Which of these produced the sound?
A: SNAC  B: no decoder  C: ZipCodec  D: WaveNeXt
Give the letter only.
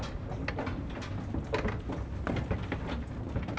B